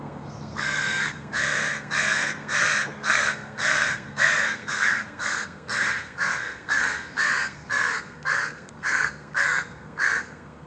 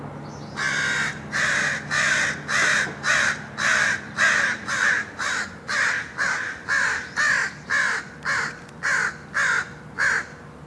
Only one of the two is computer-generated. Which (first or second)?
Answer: first